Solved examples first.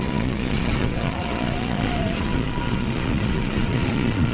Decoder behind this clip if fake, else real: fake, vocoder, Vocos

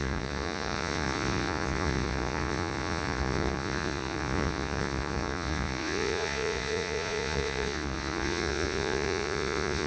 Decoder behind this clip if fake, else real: fake, vocoder, Vocos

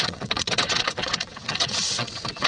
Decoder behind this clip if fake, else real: fake, vocoder, WaveNeXt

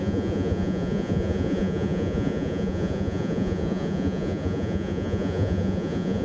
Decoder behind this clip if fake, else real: fake, vocoder, Vocos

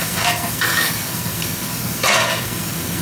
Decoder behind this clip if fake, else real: fake, codec, SNAC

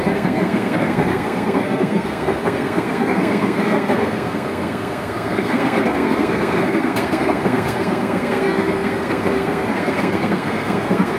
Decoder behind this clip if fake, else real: fake, codec, SNAC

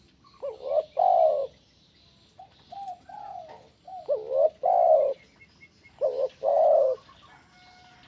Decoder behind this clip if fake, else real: real